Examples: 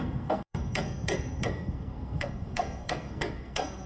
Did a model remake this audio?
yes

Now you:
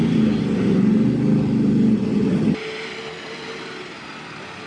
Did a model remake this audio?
no